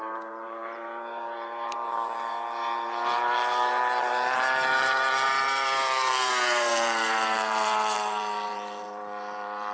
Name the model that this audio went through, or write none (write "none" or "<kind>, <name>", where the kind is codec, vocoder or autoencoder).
vocoder, BigVGAN v2